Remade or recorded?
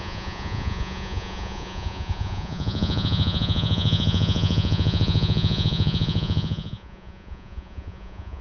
remade